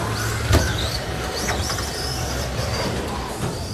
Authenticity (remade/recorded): recorded